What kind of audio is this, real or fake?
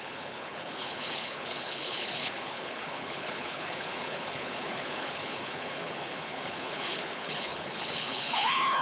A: fake